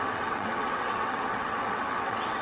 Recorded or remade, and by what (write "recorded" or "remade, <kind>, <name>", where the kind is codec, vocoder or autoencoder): remade, vocoder, WaveNeXt